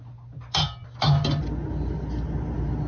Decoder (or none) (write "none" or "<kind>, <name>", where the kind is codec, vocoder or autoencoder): none